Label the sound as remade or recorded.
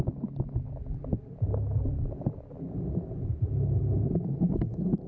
recorded